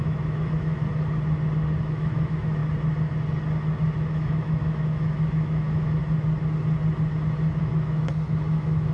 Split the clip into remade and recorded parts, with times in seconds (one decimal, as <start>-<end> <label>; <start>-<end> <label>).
0.0-0.8 remade; 0.8-1.8 recorded; 1.8-2.6 remade; 2.6-4.1 recorded; 4.1-6.0 remade; 6.0-7.6 recorded; 7.6-8.9 remade

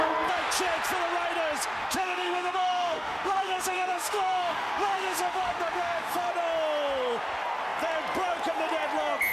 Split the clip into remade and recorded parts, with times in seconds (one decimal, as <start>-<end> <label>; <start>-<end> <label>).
0.0-1.8 recorded; 1.8-6.3 remade; 6.3-9.3 recorded

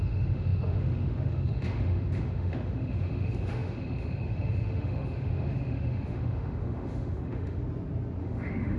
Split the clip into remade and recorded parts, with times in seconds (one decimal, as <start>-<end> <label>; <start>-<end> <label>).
0.0-7.6 remade; 7.6-8.2 recorded; 8.2-8.8 remade

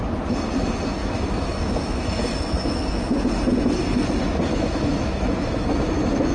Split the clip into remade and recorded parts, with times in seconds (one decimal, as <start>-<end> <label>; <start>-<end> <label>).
0.0-1.0 recorded; 1.0-3.3 remade; 3.3-4.5 recorded; 4.5-6.3 remade